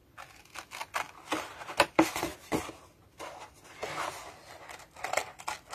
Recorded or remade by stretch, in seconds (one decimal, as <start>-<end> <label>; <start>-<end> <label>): 0.0-5.7 recorded